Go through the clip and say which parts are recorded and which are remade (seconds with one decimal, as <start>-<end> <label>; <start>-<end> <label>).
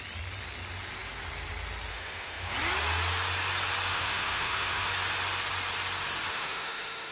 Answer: 0.0-1.9 recorded; 1.9-2.5 remade; 2.5-3.9 recorded; 3.9-4.9 remade; 4.9-6.3 recorded; 6.3-7.1 remade